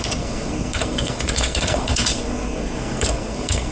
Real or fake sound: fake